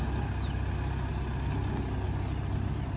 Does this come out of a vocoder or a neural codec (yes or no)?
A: no